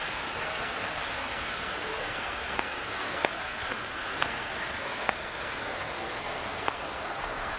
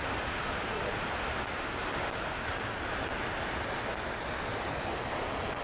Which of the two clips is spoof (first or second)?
first